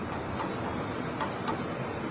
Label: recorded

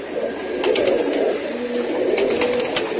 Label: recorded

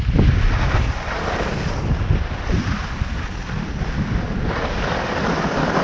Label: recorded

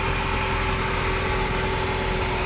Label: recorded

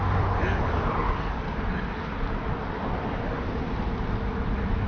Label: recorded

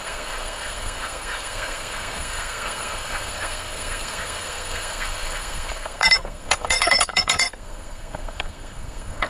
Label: remade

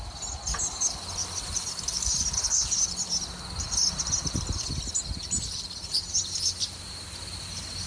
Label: recorded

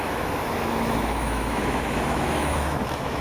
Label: remade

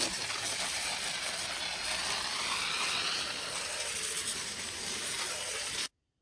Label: recorded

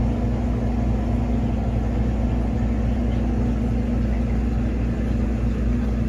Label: recorded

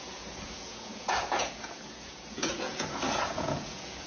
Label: remade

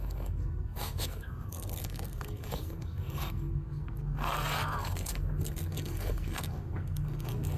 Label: remade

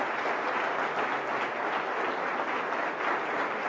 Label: recorded